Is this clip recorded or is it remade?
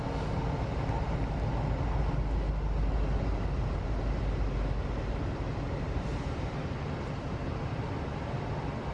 recorded